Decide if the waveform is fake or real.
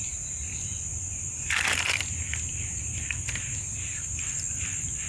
fake